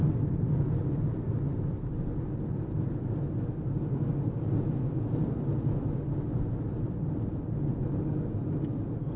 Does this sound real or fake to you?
real